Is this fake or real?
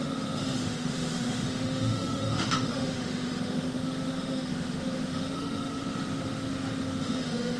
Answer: fake